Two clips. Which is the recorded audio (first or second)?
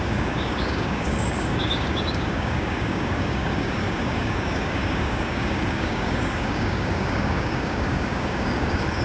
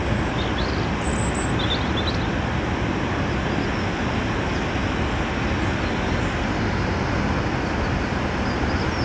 second